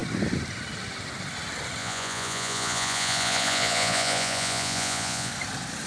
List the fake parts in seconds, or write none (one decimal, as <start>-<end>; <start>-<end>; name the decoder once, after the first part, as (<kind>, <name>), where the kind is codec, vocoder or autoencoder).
1.8-5.3 (vocoder, Vocos)